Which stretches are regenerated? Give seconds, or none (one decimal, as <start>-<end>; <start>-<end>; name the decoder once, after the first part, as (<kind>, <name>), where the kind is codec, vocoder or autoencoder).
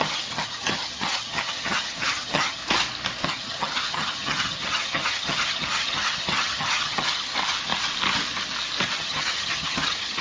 0.0-2.6 (vocoder, HiFi-GAN); 3.2-7.3; 9.0-10.2